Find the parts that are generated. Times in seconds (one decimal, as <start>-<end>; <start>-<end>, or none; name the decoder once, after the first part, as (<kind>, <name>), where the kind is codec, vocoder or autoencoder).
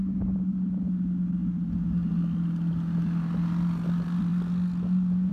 none